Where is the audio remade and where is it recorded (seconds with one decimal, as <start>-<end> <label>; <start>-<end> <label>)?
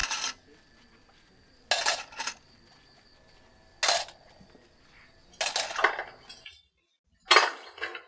0.0-8.1 recorded